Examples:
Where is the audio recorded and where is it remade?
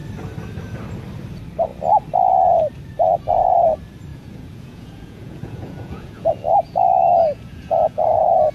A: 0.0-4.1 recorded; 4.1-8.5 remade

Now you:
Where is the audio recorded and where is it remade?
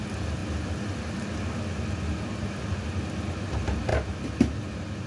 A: 0.0-5.1 recorded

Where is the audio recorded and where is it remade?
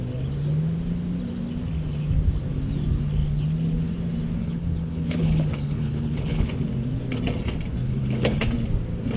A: 0.0-4.4 recorded; 4.4-6.5 remade; 6.5-7.8 recorded; 7.8-8.5 remade; 8.5-9.2 recorded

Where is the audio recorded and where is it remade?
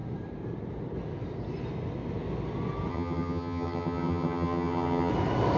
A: 0.0-2.9 recorded; 2.9-5.1 remade; 5.1-5.6 recorded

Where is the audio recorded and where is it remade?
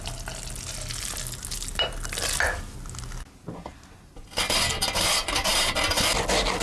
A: 0.0-6.6 recorded